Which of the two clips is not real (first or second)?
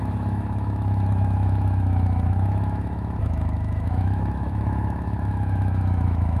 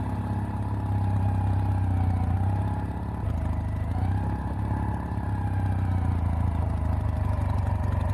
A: first